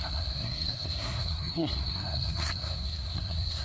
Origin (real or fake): fake